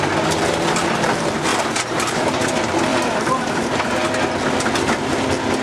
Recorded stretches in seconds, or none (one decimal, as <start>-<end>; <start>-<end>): 0.0-1.5; 2.4-2.9; 4.0-5.6